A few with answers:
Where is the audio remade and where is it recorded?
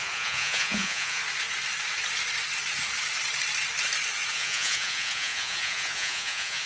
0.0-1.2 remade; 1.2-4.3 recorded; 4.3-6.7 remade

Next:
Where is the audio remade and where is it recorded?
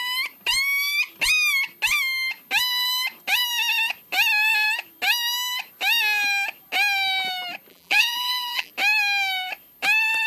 0.0-7.7 recorded; 7.7-8.7 remade; 8.7-10.3 recorded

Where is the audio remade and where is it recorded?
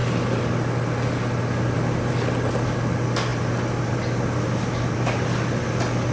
0.0-6.1 recorded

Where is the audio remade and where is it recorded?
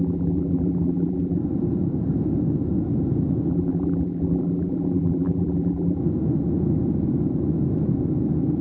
0.0-1.4 remade; 1.4-3.5 recorded; 3.5-6.0 remade; 6.0-8.6 recorded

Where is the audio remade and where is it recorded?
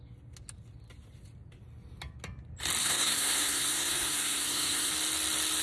0.0-2.8 recorded; 2.8-4.9 remade; 4.9-5.6 recorded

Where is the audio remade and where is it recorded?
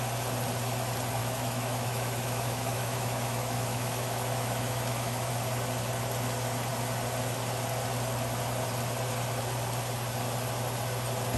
0.0-1.2 recorded; 1.2-5.3 remade; 5.3-11.4 recorded